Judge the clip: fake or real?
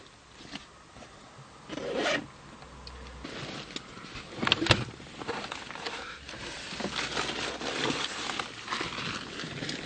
real